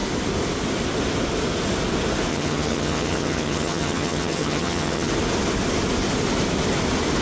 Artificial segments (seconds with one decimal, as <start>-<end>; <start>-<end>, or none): 2.3-5.1